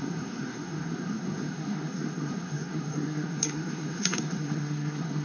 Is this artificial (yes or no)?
yes